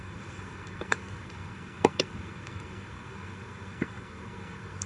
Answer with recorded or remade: remade